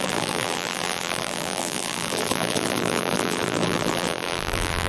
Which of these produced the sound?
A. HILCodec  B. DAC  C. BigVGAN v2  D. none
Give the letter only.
C